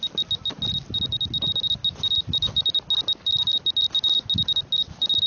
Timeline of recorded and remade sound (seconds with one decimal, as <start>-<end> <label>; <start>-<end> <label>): 0.0-5.3 recorded